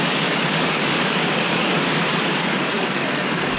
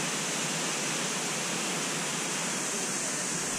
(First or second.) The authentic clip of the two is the second